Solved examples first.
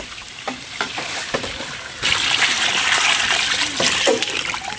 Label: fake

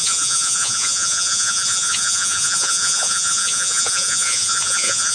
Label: fake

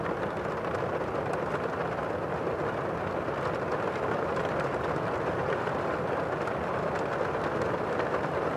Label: real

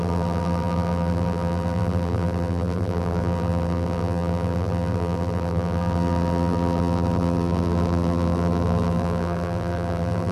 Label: fake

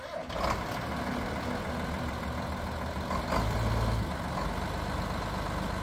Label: real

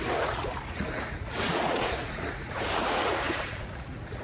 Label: fake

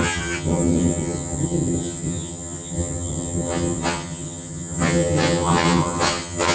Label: fake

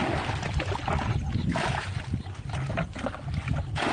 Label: real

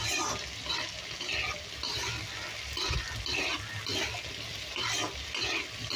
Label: real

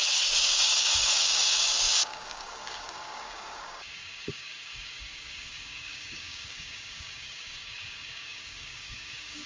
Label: fake